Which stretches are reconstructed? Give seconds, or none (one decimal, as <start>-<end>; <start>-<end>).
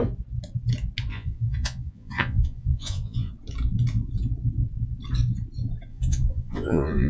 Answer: 1.1-3.3; 5.9-7.1